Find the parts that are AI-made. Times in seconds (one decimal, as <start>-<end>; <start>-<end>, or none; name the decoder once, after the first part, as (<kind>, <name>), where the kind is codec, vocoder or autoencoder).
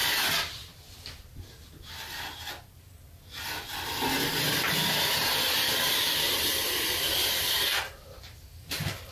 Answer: none